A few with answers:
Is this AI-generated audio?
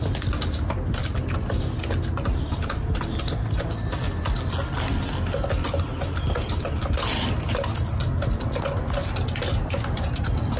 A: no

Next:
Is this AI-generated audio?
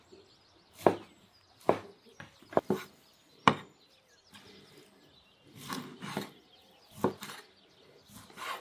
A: no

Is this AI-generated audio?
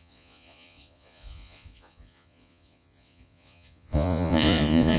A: yes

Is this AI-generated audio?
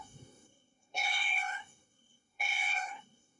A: yes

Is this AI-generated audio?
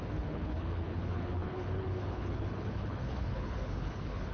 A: yes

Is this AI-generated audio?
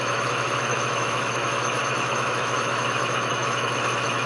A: yes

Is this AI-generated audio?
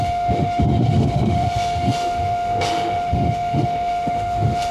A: yes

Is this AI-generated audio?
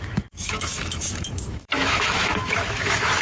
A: yes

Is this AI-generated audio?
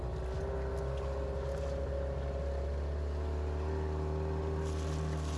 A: no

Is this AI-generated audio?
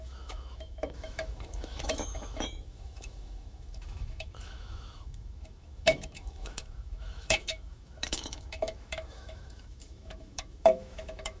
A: yes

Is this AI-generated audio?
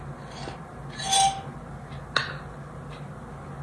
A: no